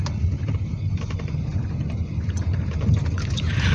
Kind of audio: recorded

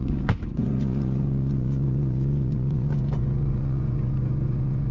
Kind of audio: remade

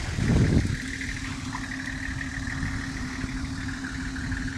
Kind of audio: recorded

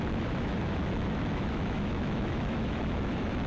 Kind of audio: remade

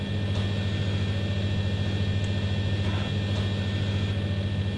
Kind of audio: recorded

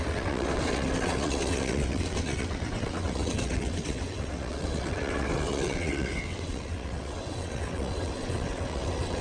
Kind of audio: remade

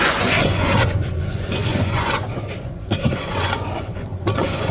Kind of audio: remade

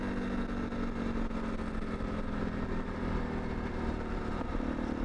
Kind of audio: recorded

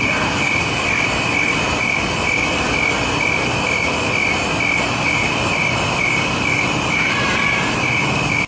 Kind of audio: recorded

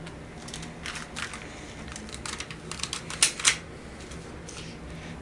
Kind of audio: recorded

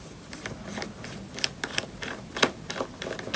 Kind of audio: recorded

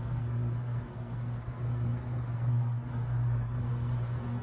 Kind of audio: remade